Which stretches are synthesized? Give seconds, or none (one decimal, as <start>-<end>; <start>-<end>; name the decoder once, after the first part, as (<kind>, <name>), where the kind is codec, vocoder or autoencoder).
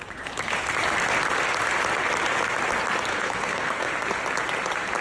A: 3.1-3.9 (codec, SNAC)